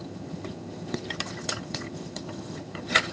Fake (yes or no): yes